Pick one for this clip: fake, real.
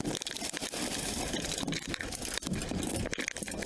fake